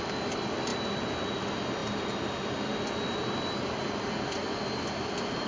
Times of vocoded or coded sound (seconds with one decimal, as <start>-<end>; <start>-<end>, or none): none